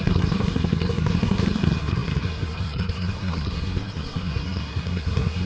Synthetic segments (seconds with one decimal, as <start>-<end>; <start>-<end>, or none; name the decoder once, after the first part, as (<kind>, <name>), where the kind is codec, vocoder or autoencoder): 0.0-5.5 (codec, SNAC)